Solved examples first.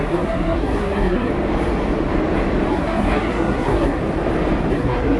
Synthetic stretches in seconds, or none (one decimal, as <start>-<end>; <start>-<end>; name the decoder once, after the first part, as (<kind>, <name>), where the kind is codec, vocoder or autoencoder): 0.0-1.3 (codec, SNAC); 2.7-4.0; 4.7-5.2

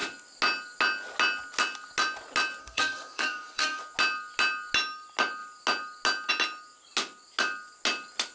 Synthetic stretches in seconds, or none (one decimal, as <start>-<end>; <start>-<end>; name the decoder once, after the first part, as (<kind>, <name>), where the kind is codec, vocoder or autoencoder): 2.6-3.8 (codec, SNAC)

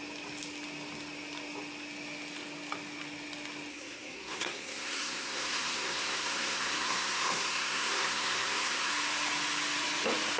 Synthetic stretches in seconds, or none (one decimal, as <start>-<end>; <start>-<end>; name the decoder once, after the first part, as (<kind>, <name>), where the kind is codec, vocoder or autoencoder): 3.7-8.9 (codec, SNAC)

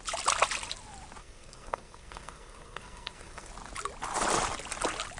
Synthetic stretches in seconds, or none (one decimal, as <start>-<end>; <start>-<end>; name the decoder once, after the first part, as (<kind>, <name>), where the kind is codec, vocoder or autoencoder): 1.2-3.5 (codec, SNAC)